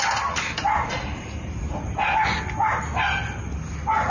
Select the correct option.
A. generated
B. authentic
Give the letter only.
B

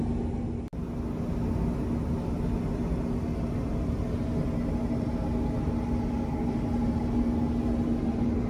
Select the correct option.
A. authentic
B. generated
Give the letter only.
A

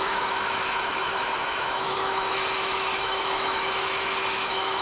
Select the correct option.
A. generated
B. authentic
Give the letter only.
A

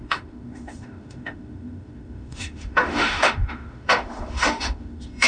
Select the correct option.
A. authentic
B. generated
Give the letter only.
B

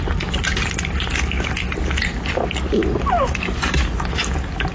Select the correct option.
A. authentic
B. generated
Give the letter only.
A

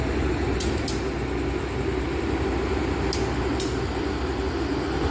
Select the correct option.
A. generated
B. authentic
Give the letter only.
B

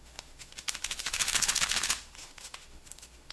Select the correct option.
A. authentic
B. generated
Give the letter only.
B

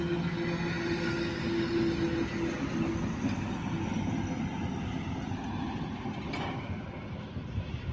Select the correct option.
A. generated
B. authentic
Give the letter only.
B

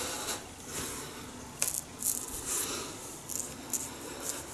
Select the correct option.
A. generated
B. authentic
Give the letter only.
B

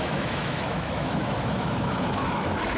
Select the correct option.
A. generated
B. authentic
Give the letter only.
A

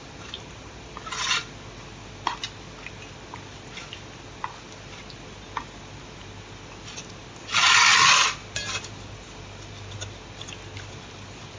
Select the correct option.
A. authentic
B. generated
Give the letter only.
A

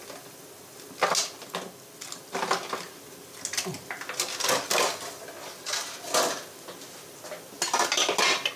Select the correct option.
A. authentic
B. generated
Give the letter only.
A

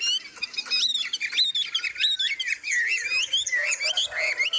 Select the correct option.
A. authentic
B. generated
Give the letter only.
A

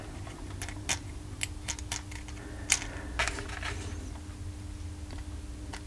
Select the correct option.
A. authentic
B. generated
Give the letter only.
A